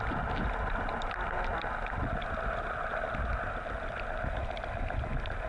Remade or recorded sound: recorded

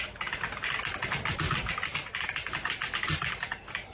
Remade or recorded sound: recorded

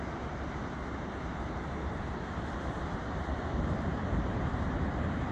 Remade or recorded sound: remade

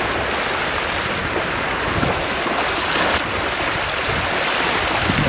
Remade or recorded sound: recorded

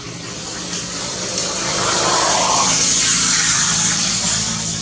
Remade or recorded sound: recorded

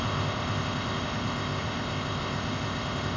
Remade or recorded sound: remade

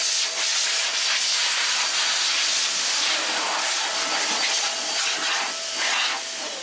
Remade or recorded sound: recorded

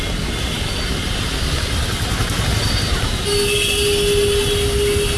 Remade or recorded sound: recorded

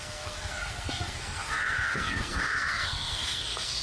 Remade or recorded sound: remade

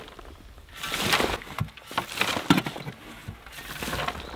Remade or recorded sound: recorded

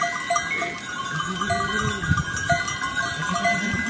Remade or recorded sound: recorded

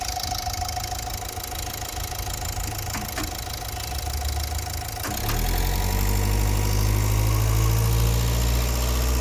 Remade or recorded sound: recorded